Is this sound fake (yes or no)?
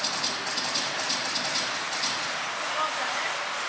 no